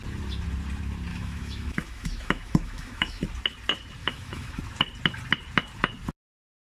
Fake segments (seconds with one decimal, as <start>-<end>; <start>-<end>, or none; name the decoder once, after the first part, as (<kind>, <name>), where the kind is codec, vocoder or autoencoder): 1.1-3.2 (autoencoder, DAC-VAE); 4.0-4.6